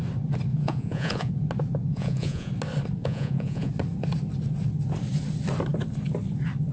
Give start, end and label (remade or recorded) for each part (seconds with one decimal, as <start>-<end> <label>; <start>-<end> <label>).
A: 0.0-0.5 recorded; 0.5-1.3 remade; 1.3-1.9 recorded; 1.9-2.5 remade; 2.5-3.0 recorded; 3.0-3.7 remade; 3.7-6.7 recorded